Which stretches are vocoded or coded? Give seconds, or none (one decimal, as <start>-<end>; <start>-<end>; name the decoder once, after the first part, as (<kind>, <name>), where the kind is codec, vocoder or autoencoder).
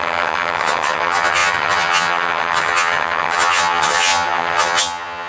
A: 0.0-5.3 (vocoder, HiFi-GAN)